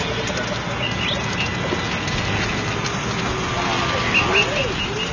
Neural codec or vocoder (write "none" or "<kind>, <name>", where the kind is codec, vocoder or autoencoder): none